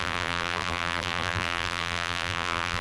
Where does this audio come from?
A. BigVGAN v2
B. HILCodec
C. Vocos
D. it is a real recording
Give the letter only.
A